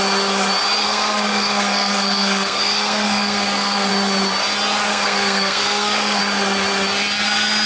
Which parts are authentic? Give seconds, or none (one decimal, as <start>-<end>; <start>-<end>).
0.0-0.8; 3.9-4.9; 6.2-7.7